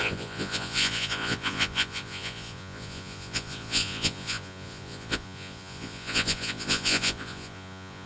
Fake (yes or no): yes